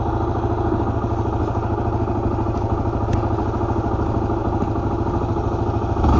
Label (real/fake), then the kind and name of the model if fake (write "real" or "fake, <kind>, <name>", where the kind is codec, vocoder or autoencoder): real